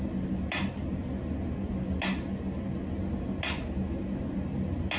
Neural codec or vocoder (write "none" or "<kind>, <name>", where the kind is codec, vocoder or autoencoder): none